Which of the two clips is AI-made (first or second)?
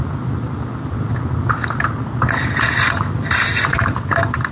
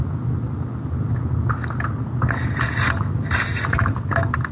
first